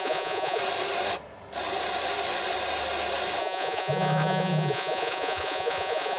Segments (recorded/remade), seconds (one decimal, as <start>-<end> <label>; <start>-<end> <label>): 0.0-0.6 remade; 0.6-3.4 recorded; 3.4-6.2 remade